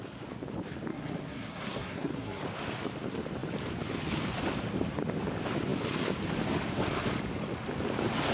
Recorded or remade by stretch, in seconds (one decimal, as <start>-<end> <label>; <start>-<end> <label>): 0.0-0.9 recorded; 0.9-2.4 remade; 2.4-8.3 recorded